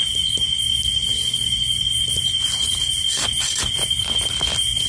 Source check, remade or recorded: recorded